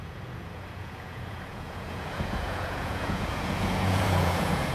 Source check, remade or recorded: remade